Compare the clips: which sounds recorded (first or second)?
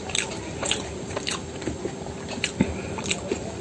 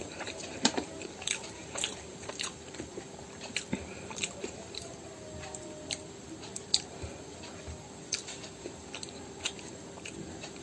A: first